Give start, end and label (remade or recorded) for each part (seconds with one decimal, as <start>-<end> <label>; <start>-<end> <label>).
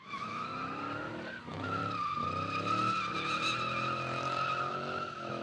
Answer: 0.0-0.5 remade; 0.5-1.4 recorded; 1.4-1.8 remade; 1.8-4.7 recorded; 4.7-5.4 remade